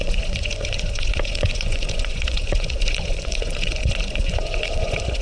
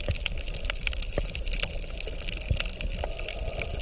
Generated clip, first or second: first